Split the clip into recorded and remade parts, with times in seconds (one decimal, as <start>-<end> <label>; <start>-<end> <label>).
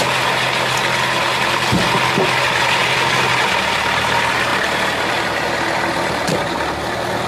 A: 0.0-2.8 recorded; 2.8-3.3 remade; 3.3-4.5 recorded; 4.5-5.1 remade; 5.1-7.3 recorded